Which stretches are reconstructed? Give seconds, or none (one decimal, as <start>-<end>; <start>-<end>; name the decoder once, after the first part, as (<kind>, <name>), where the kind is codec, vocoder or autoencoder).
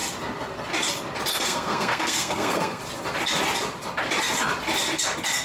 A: 1.3-2.8 (codec, SNAC)